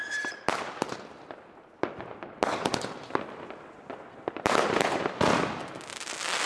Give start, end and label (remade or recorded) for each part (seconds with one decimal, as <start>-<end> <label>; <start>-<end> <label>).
0.0-2.7 recorded; 2.7-4.8 remade; 4.8-6.5 recorded